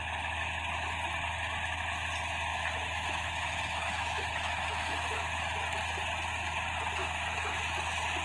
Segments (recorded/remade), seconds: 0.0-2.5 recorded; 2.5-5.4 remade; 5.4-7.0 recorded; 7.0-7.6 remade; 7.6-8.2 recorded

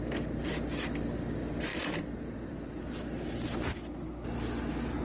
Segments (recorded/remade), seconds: 0.0-1.7 recorded; 1.7-2.8 remade; 2.8-5.0 recorded

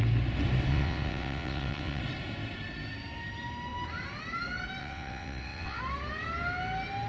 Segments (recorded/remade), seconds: 0.0-0.7 recorded; 0.7-2.0 remade; 2.0-4.8 recorded; 4.8-5.8 remade; 5.8-7.1 recorded